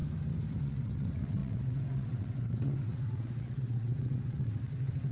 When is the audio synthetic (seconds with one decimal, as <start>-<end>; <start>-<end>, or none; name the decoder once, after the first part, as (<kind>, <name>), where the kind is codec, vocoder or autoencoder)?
0.6-5.1 (vocoder, WaveNeXt)